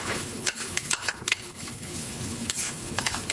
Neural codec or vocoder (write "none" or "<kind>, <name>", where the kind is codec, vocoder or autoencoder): codec, HILCodec